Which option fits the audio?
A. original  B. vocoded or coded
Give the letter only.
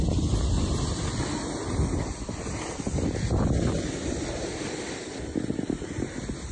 A